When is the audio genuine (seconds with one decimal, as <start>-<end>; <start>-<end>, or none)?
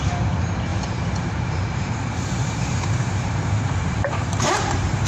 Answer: 0.0-0.7; 1.9-2.6